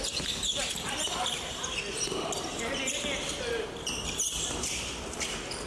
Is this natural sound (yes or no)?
yes